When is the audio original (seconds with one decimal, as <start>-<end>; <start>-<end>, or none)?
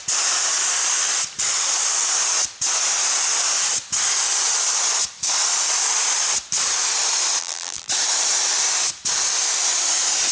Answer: 0.0-7.4; 7.9-10.3